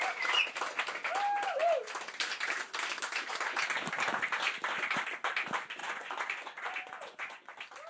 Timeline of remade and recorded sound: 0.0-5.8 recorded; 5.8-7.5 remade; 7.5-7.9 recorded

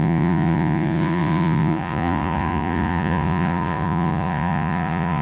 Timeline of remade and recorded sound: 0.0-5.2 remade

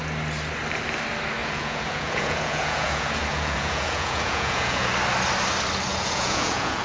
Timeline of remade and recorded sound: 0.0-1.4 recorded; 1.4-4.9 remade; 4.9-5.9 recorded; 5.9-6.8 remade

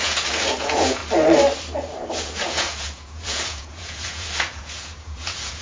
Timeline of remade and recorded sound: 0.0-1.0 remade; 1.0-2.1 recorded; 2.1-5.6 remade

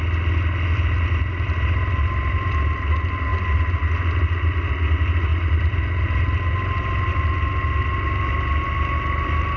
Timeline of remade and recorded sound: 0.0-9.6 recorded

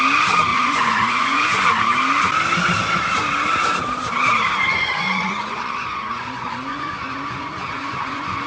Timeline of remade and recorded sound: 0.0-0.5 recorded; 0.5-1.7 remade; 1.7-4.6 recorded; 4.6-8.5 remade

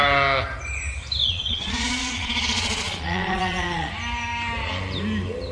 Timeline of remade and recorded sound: 0.0-1.2 recorded; 1.2-3.9 remade; 3.9-5.5 recorded

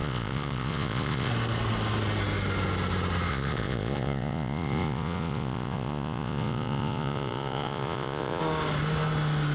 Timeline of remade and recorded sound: 0.0-1.3 remade; 1.3-3.3 recorded; 3.3-8.4 remade; 8.4-9.5 recorded